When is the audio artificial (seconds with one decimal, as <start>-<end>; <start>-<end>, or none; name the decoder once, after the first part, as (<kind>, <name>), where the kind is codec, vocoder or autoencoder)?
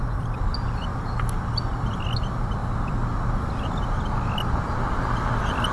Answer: none